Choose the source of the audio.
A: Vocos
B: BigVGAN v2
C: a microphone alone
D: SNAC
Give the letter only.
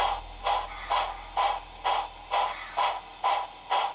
C